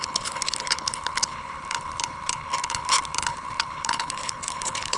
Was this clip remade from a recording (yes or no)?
yes